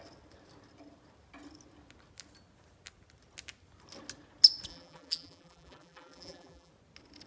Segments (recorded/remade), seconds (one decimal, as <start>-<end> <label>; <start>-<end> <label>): 0.0-4.7 recorded; 4.7-6.7 remade; 6.7-7.3 recorded